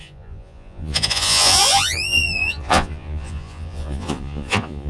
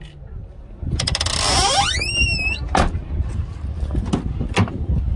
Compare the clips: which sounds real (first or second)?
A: second